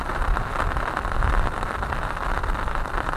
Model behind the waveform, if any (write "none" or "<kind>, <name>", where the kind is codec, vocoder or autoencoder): none